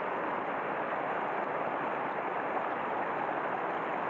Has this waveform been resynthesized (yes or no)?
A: no